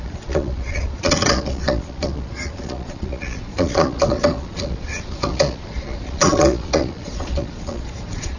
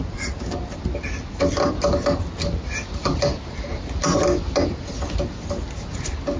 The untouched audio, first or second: second